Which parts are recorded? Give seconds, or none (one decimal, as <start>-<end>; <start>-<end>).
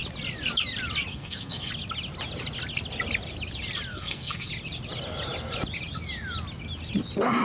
0.0-1.1; 1.7-3.9; 4.5-7.4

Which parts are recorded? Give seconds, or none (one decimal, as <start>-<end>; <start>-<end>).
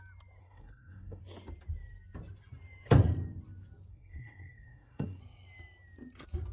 0.0-0.4; 1.2-3.9; 5.2-6.5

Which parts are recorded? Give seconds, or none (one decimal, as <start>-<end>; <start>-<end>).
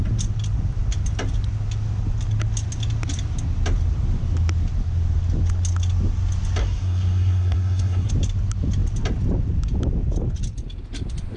0.0-6.6; 8.1-11.4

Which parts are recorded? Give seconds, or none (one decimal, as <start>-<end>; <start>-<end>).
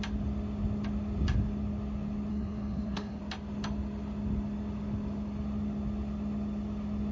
0.0-2.3; 3.2-7.1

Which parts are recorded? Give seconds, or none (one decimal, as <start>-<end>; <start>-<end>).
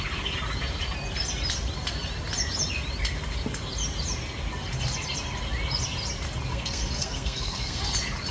0.0-6.5; 7.8-8.3